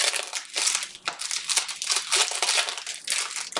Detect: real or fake real